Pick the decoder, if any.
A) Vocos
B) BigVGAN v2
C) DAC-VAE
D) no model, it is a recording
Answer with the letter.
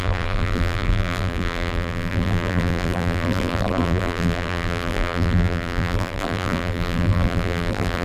B